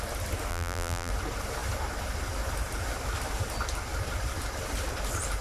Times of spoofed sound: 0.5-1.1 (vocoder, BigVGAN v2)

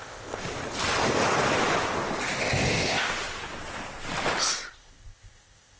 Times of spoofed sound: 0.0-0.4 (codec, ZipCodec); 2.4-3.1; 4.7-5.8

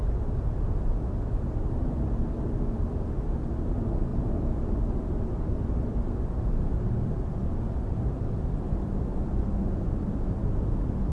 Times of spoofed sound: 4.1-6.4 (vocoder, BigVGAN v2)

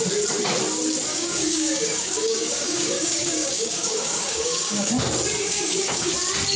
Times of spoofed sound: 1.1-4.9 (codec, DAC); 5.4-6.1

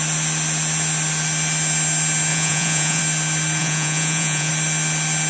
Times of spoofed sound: 2.3-3.0 (vocoder, Vocos); 3.6-4.5